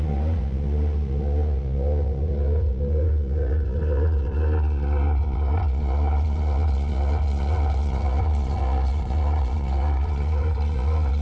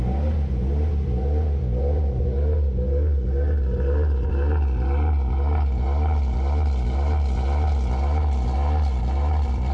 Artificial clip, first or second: first